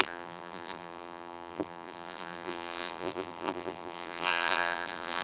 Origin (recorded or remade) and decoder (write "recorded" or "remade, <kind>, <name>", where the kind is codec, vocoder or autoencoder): remade, vocoder, BigVGAN v2